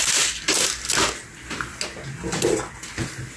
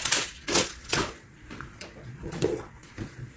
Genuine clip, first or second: first